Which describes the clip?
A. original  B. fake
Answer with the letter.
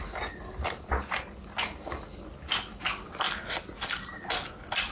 A